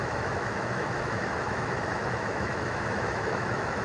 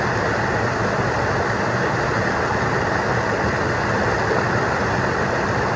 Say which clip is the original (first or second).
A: second